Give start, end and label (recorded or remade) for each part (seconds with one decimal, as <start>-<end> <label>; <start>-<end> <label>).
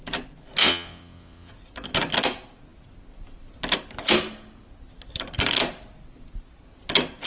0.0-0.6 recorded; 0.6-1.5 remade; 1.5-7.3 recorded